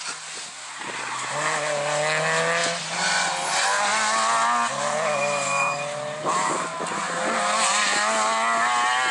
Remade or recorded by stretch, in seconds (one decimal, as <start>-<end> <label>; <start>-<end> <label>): 0.0-9.1 recorded